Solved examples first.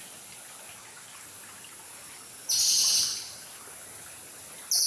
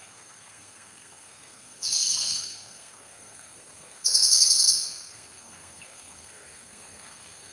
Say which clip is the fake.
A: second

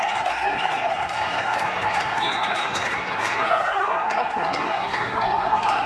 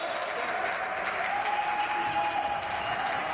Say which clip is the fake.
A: first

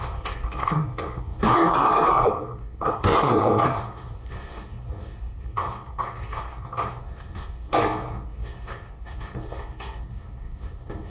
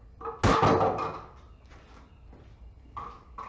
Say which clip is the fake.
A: first